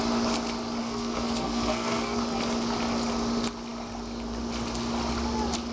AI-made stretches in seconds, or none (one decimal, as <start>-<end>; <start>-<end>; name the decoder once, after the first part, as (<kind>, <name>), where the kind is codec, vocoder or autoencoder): 0.8-2.2 (codec, SNAC)